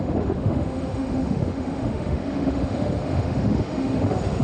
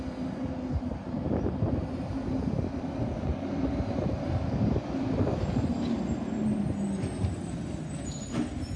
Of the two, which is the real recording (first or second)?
second